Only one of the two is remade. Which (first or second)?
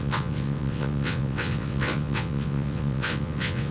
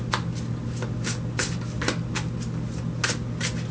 first